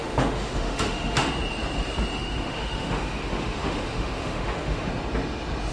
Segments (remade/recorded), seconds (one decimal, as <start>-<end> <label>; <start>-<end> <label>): 0.0-1.3 remade; 1.3-2.1 recorded; 2.1-4.9 remade; 4.9-5.7 recorded